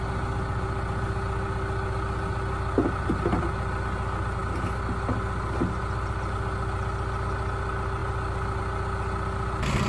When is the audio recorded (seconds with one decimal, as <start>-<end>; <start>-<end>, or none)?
0.0-9.9